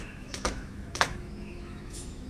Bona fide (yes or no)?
no